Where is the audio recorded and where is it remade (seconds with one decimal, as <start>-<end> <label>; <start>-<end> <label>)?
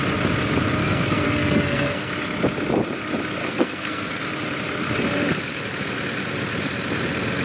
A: 0.0-0.8 recorded; 0.8-2.1 remade; 2.1-3.4 recorded; 3.4-4.2 remade; 4.2-7.4 recorded